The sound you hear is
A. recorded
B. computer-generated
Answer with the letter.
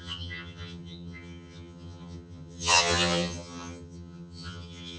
B